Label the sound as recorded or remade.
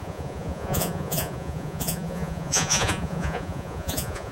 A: remade